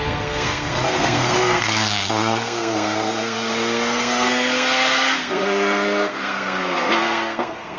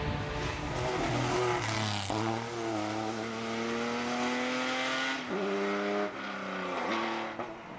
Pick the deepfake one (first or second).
first